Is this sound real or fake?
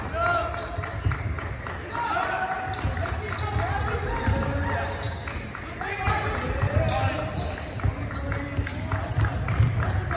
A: real